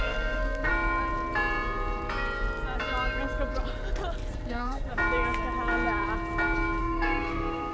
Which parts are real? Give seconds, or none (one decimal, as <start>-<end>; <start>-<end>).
0.7-4.3; 4.9-6.8

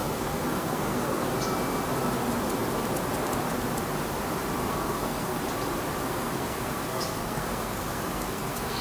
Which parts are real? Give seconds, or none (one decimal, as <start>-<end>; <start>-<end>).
1.3-4.6; 5.4-6.0

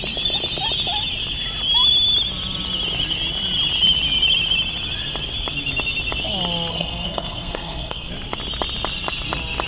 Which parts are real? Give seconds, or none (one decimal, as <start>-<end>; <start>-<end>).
0.0-6.7; 8.1-9.7